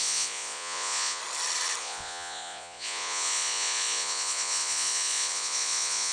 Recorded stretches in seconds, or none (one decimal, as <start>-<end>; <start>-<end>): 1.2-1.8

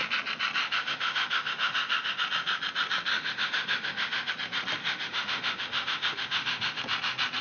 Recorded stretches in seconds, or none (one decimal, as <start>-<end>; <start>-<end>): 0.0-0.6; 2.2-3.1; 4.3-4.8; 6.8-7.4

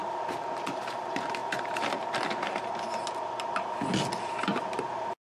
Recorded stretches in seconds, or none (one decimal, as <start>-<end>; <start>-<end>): 0.0-0.6; 1.4-4.6